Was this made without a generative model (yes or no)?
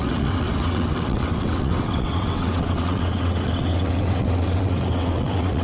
no